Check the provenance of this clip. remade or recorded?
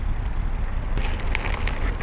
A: recorded